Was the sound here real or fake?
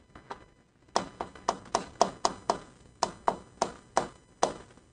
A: real